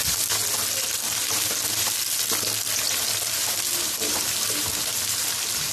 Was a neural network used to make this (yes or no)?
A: no